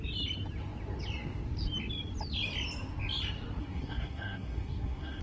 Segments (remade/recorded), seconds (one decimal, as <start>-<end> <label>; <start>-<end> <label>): 0.0-3.6 recorded; 3.6-5.2 remade